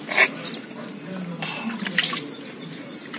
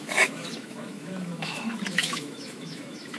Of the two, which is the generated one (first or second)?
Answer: second